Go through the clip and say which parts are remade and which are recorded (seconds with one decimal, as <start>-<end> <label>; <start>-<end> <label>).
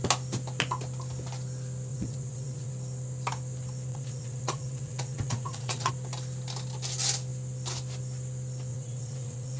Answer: 0.0-1.9 recorded; 1.9-2.7 remade; 2.7-3.9 recorded; 3.9-5.9 remade; 5.9-8.7 recorded; 8.7-9.6 remade